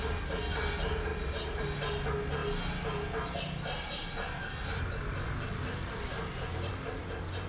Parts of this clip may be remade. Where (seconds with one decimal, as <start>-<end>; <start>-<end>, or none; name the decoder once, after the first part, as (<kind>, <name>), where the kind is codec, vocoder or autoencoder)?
none